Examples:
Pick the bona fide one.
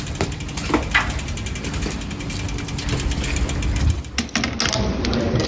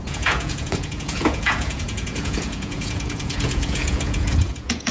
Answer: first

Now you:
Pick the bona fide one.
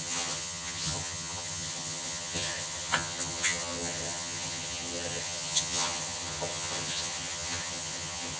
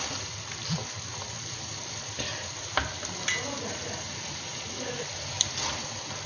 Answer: second